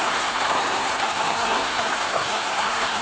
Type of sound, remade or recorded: remade